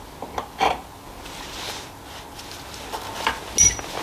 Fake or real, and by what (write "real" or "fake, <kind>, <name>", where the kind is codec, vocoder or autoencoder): real